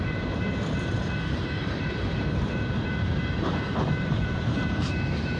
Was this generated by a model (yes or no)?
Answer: yes